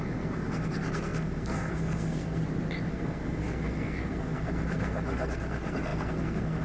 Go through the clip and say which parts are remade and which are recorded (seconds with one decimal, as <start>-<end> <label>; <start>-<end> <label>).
0.0-2.4 remade; 2.4-2.9 recorded; 2.9-6.6 remade